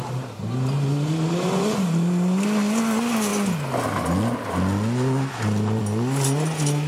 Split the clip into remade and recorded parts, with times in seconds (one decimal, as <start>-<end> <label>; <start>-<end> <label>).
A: 0.0-6.9 recorded